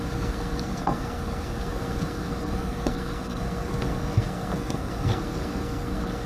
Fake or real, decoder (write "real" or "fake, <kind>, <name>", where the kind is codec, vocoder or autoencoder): fake, codec, SNAC